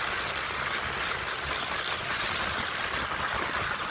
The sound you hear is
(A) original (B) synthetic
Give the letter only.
A